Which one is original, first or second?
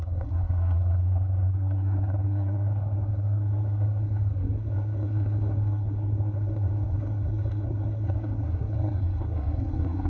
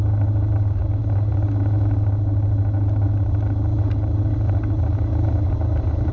second